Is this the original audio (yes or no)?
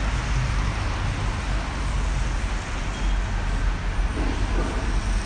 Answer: yes